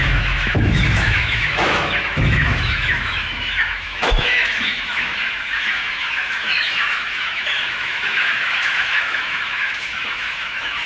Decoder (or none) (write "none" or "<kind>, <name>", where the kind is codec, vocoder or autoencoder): autoencoder, DAC-VAE